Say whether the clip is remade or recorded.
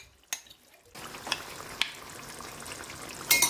recorded